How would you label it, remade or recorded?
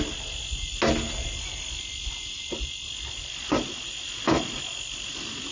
recorded